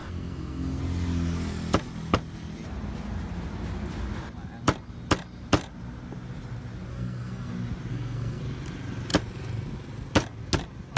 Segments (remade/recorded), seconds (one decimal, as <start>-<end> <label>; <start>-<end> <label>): 0.0-0.8 remade; 0.8-6.9 recorded; 6.9-7.5 remade; 7.5-7.9 recorded; 7.9-8.4 remade; 8.4-11.0 recorded